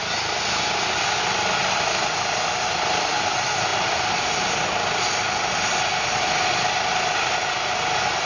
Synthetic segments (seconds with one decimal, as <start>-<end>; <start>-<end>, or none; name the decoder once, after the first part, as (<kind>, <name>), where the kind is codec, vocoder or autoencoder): none

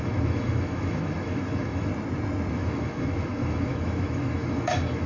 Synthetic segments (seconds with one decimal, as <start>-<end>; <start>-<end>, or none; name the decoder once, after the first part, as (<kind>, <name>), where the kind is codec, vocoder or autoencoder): 0.0-1.9 (autoencoder, DAC-VAE); 2.5-5.1

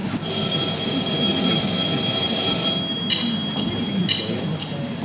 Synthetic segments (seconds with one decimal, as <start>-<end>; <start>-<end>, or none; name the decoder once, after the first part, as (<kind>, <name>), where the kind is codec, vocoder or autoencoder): none

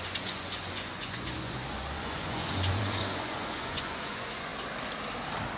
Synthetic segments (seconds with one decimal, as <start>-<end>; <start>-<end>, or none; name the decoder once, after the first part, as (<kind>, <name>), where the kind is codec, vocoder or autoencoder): 0.0-4.5 (vocoder, Vocos)

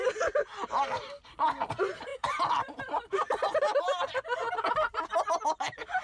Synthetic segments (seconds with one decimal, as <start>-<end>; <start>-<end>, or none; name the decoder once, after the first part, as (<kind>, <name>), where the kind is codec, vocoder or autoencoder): 2.1-3.6 (vocoder, BigVGAN v2)

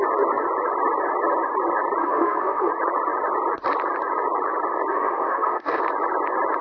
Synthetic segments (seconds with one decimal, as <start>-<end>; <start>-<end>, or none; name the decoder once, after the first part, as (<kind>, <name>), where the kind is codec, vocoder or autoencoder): 2.0-2.7 (autoencoder, DAC-VAE); 4.9-5.8

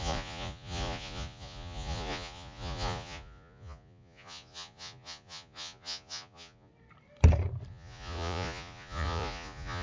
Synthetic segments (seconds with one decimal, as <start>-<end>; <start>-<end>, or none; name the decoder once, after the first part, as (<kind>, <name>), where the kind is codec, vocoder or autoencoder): 0.0-6.7 (vocoder, Vocos); 7.7-9.8